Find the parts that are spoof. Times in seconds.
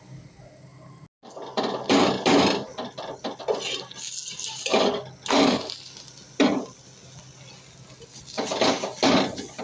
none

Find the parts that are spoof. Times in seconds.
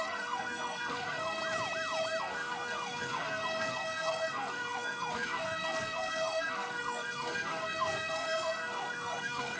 0.0-1.4 (codec, SNAC); 2.2-9.6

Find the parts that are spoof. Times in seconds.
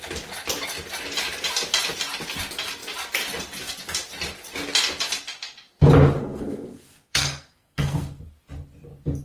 6.2-8.2 (codec, SNAC)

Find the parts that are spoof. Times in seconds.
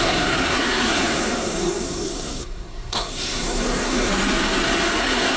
0.0-4.1 (codec, SNAC); 5.0-5.4